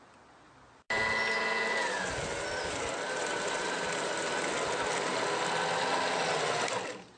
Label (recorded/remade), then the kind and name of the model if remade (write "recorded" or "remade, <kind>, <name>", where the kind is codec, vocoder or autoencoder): recorded